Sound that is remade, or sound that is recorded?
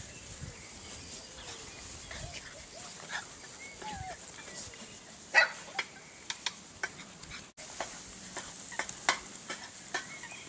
recorded